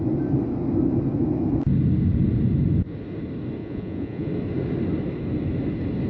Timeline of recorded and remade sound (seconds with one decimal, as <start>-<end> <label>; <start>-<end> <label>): 0.0-3.6 recorded; 3.6-4.3 remade; 4.3-6.1 recorded

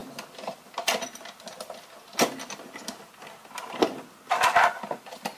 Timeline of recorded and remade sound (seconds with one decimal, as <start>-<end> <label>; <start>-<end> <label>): 0.0-5.4 recorded